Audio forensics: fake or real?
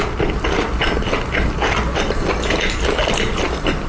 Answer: real